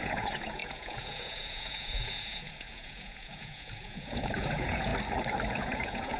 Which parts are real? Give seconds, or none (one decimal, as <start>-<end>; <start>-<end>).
4.9-5.6